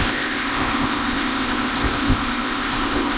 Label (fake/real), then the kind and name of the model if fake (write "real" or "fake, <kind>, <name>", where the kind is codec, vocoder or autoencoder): fake, codec, ZipCodec